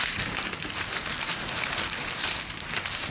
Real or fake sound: fake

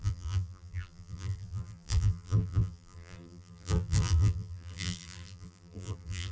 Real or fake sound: fake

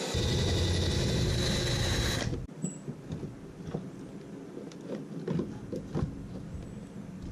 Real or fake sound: real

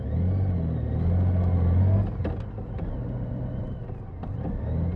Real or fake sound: real